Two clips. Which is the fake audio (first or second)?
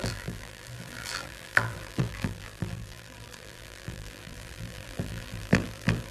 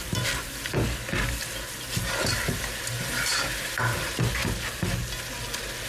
first